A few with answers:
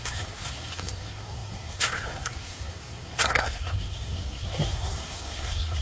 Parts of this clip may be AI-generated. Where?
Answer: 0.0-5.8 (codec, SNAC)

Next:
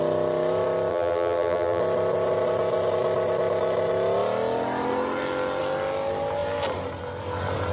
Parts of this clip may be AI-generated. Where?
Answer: 0.9-1.8 (vocoder, BigVGAN v2)

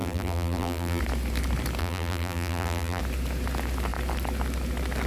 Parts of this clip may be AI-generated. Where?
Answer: 0.0-1.0 (vocoder, BigVGAN v2); 1.8-3.0

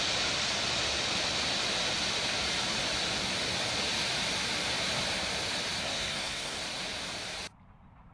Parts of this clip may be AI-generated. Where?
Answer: 5.8-6.6 (codec, SNAC)

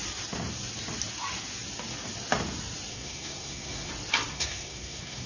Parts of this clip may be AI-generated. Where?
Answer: 2.9-3.9 (codec, SNAC); 4.3-5.3

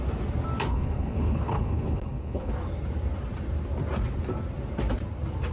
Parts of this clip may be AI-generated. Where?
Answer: 0.7-2.5 (codec, HILCodec)